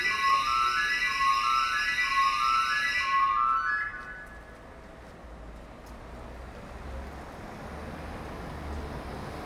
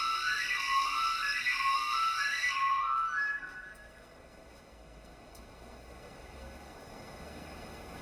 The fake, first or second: second